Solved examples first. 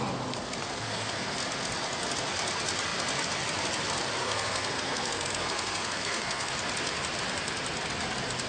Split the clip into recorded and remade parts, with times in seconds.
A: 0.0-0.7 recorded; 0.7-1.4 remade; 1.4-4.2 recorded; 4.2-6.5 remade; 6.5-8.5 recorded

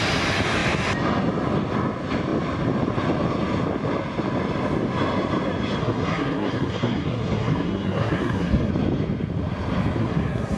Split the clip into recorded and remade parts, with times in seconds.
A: 0.0-5.8 recorded; 5.8-8.7 remade; 8.7-10.0 recorded; 10.0-10.6 remade

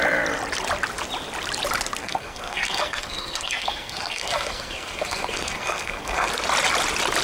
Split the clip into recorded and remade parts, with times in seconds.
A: 0.0-2.0 recorded; 2.0-6.3 remade; 6.3-7.2 recorded

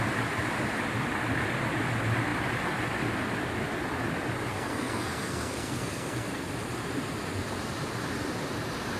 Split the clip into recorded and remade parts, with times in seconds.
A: 0.0-4.5 recorded; 4.5-6.5 remade; 6.5-9.0 recorded